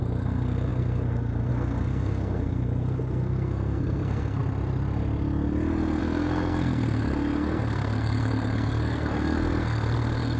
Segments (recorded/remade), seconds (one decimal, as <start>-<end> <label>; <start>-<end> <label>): 0.0-4.4 remade; 4.4-6.0 recorded; 6.0-10.4 remade